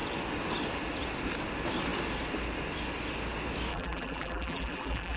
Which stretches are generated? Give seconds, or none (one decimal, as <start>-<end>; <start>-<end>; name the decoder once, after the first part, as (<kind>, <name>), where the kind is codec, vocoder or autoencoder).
3.7-5.2 (vocoder, BigVGAN v2)